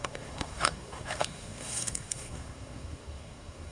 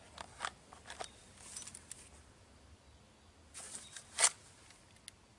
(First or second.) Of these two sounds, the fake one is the first